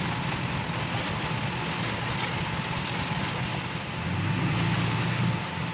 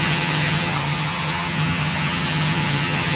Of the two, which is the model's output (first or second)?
second